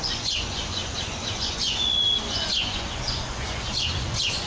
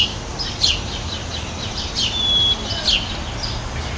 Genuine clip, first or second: second